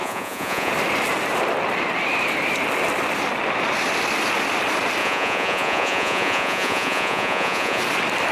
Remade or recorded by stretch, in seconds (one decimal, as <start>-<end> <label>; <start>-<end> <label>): 0.0-0.7 remade; 0.7-5.0 recorded; 5.0-7.8 remade; 7.8-8.3 recorded